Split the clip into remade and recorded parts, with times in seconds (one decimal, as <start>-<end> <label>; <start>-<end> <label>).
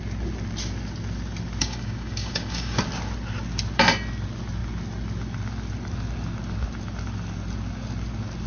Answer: 0.0-1.6 recorded; 1.6-2.8 remade; 2.8-8.5 recorded